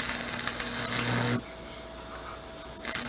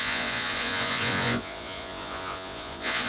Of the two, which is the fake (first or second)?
second